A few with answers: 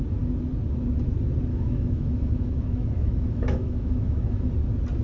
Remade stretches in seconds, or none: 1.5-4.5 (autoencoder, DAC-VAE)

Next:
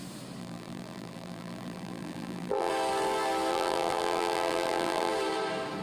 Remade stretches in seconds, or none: 0.4-2.7 (vocoder, BigVGAN v2); 3.5-5.1

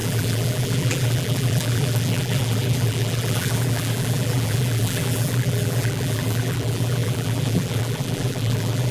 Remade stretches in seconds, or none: 0.0-8.9 (vocoder, BigVGAN v2)

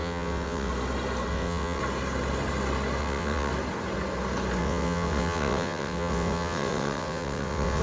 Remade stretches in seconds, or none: 0.0-0.7 (vocoder, WaveNeXt); 1.3-1.8; 3.0-3.5; 4.6-7.8